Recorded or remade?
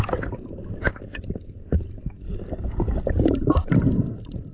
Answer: recorded